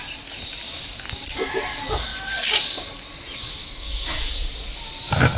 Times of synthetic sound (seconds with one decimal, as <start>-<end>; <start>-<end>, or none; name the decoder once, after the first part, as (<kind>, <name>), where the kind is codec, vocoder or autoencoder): 3.6-4.3 (autoencoder, DAC-VAE)